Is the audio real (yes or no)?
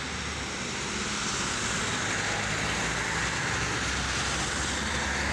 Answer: yes